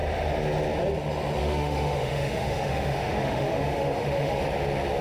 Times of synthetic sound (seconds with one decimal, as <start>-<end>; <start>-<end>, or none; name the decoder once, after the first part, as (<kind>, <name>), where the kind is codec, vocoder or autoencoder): 1.4-4.4 (autoencoder, DAC-VAE)